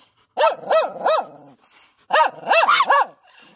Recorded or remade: recorded